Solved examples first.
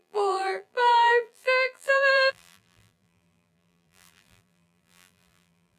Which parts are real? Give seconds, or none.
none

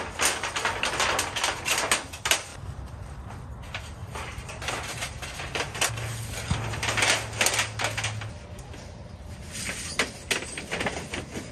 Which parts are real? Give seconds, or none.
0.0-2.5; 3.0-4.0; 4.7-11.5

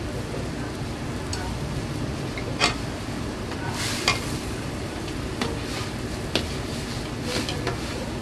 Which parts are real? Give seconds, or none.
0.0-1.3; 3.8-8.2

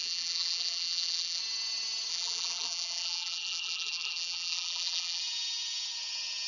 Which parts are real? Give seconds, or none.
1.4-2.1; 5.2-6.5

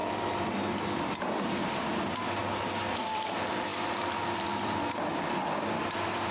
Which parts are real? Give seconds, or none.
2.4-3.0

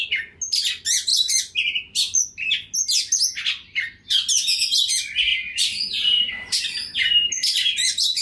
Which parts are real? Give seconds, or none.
0.0-5.3; 6.3-8.2

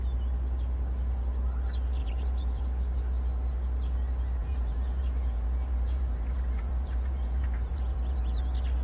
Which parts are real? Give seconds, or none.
0.0-2.0; 2.6-4.4; 8.4-8.8

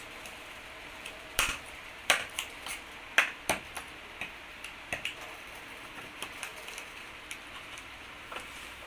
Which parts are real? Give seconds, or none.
none